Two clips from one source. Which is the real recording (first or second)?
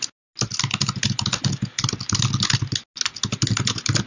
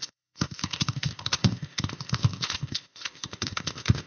first